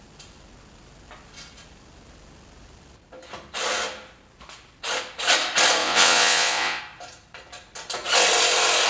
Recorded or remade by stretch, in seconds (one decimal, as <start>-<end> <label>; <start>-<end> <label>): 0.0-5.8 recorded; 5.8-6.8 remade; 6.8-8.9 recorded